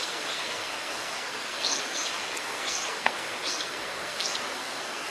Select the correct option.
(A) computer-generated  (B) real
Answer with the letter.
A